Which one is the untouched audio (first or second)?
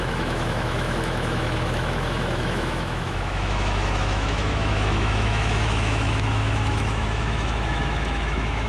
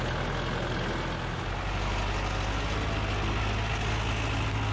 second